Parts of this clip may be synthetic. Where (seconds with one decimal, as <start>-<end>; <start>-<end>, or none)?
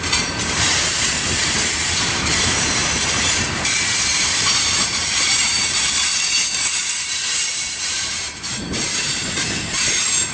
0.0-10.3